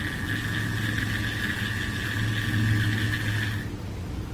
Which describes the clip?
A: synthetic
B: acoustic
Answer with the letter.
B